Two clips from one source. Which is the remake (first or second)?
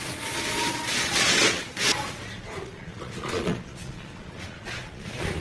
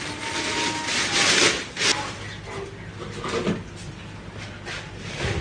first